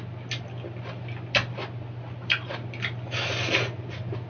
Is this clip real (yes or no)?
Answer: yes